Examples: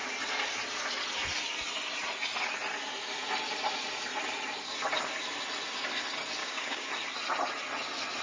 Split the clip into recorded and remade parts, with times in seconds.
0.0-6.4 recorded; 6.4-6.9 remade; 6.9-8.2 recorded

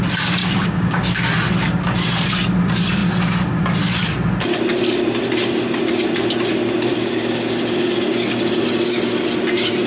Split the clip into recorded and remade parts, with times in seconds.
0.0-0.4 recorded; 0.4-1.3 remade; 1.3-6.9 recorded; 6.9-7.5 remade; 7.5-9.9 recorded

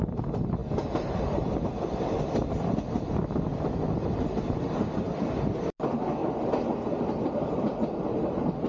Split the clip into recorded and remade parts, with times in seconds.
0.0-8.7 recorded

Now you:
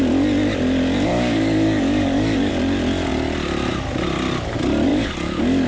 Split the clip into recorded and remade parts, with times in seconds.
0.0-1.1 recorded; 1.1-2.5 remade; 2.5-4.9 recorded; 4.9-5.7 remade

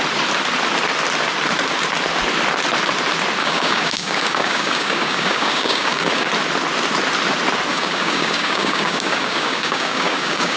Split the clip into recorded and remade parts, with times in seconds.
0.0-3.4 recorded; 3.4-6.3 remade; 6.3-7.7 recorded; 7.7-10.6 remade

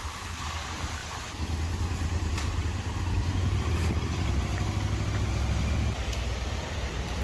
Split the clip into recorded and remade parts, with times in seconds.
0.0-7.2 recorded